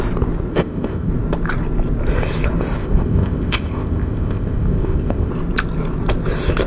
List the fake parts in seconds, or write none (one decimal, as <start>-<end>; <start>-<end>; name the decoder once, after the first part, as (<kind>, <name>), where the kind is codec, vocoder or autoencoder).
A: 0.5-1.1 (codec, ZipCodec); 2.8-5.3

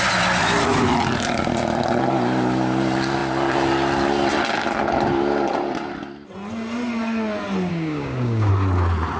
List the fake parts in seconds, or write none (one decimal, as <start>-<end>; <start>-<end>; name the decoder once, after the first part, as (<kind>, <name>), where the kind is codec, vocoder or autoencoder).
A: 7.7-8.5 (codec, DAC)

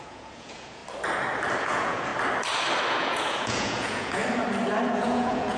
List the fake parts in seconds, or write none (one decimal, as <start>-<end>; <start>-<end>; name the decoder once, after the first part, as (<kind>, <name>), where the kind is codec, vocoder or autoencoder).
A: 0.0-0.8 (vocoder, Vocos); 1.6-2.1; 2.9-4.2; 4.9-5.6